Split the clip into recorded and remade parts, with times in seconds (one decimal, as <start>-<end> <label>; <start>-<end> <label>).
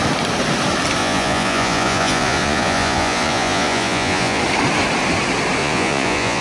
0.0-1.0 recorded; 1.0-4.4 remade; 4.4-5.6 recorded; 5.6-6.4 remade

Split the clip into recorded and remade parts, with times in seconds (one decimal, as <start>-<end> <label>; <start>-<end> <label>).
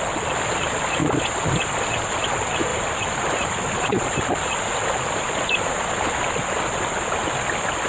0.0-7.9 recorded